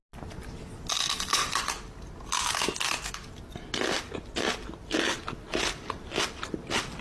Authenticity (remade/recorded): recorded